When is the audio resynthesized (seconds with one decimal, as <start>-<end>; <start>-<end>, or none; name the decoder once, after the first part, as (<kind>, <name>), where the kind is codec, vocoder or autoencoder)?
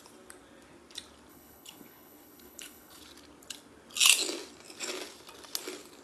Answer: 1.3-3.0 (codec, HILCodec)